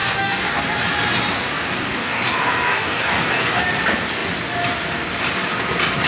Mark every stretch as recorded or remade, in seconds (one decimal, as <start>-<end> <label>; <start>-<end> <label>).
0.0-0.6 remade; 0.6-1.3 recorded; 1.3-3.6 remade; 3.6-6.1 recorded